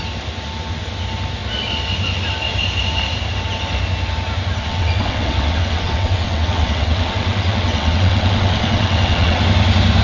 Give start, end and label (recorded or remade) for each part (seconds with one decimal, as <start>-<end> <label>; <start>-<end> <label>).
0.0-4.6 recorded; 4.6-9.4 remade; 9.4-10.0 recorded